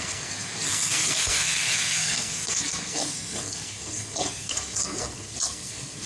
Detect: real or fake fake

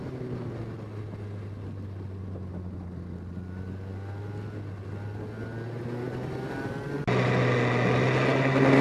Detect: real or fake real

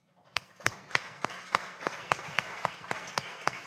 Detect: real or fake fake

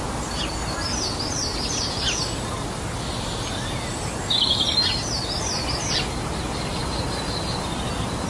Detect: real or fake real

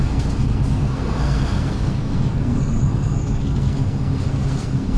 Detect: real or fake fake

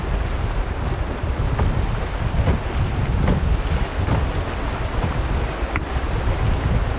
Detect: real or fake real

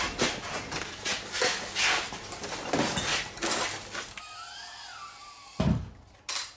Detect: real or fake real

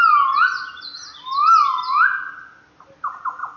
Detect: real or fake real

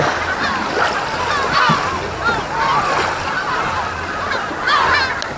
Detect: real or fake real